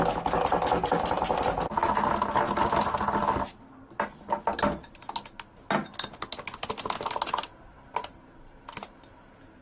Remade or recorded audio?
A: recorded